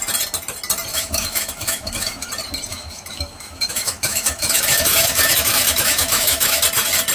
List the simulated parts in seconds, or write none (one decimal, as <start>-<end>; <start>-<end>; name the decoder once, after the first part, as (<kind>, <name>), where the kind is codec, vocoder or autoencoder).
0.9-2.3 (autoencoder, DAC-VAE); 2.7-6.6